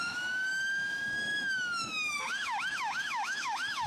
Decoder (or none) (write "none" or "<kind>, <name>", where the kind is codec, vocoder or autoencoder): autoencoder, DAC-VAE